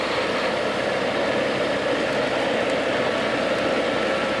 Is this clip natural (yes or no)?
yes